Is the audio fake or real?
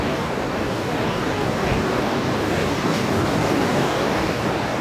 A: fake